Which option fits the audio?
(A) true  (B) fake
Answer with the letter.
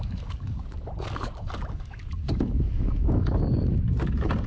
B